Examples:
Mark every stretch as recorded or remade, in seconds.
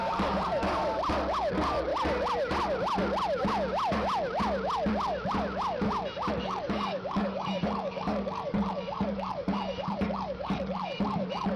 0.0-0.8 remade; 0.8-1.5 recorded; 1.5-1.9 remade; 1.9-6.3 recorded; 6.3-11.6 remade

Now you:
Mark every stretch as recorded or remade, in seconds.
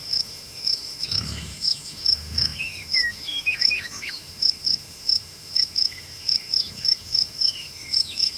0.0-8.4 remade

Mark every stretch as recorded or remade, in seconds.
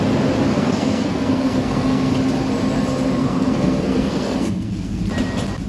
0.0-0.5 recorded; 0.5-2.1 remade; 2.1-3.2 recorded; 3.2-5.0 remade; 5.0-5.7 recorded